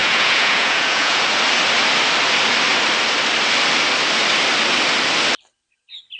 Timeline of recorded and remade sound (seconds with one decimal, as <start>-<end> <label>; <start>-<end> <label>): 0.0-1.2 remade; 1.2-6.2 recorded